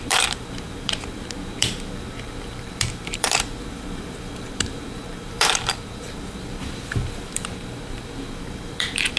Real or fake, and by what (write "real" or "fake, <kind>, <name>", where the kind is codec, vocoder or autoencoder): fake, vocoder, BigVGAN v2